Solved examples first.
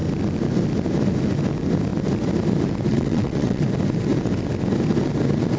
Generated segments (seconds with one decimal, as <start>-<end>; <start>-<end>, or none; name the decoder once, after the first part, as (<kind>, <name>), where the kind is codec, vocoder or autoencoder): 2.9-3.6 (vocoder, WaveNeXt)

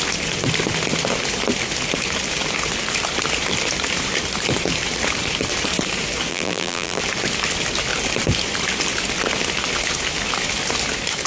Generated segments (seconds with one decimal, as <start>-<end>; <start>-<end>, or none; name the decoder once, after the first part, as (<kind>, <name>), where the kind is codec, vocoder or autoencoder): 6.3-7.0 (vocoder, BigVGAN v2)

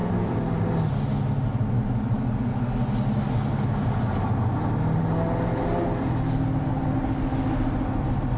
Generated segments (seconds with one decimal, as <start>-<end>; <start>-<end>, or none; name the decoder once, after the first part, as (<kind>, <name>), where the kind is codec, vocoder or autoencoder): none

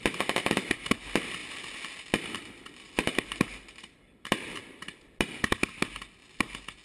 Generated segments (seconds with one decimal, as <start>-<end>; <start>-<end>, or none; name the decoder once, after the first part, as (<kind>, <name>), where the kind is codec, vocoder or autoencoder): none

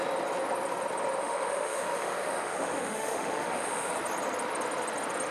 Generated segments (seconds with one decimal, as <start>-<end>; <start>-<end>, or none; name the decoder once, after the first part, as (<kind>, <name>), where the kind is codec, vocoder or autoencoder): 1.2-3.9 (autoencoder, DAC-VAE)